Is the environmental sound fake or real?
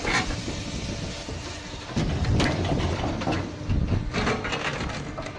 real